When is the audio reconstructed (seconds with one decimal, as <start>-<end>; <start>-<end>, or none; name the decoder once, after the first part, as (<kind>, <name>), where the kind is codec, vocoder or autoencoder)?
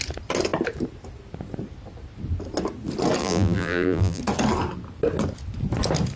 3.2-4.2 (vocoder, BigVGAN v2)